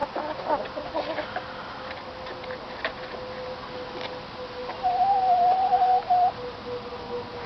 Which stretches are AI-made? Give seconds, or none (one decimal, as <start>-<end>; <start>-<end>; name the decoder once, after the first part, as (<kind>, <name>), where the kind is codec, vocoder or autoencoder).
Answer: 4.6-5.9 (vocoder, BigVGAN v2)